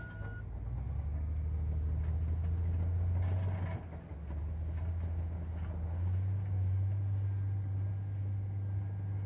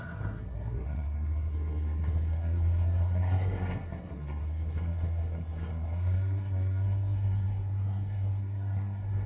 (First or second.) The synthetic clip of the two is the second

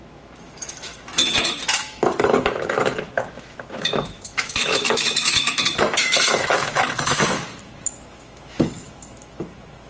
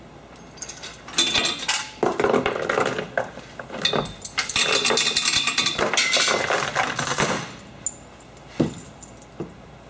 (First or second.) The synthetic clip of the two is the first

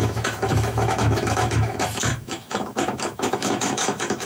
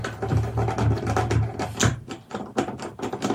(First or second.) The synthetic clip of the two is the first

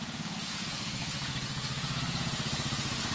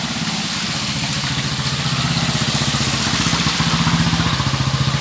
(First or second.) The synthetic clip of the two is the first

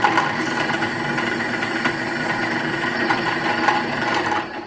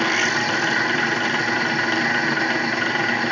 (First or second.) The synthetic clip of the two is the first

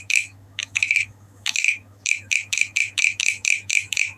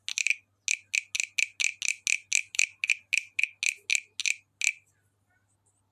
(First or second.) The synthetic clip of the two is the first